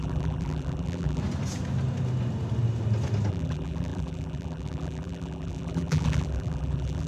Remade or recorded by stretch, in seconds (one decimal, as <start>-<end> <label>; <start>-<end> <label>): 0.0-1.2 remade; 1.2-3.3 recorded; 3.3-7.1 remade